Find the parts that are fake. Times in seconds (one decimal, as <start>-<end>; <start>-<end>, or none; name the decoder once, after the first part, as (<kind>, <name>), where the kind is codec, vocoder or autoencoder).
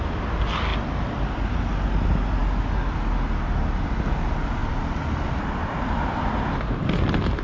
4.6-6.5 (vocoder, BigVGAN v2)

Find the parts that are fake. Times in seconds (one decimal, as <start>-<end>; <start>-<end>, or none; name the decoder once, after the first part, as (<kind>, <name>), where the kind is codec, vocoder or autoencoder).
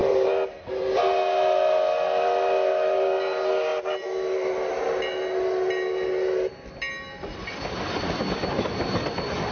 0.0-0.7 (vocoder, BigVGAN v2)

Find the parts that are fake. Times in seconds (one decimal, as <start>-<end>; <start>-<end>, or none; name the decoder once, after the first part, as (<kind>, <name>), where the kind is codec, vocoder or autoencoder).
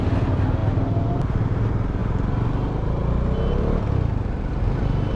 0.6-1.1 (vocoder, BigVGAN v2)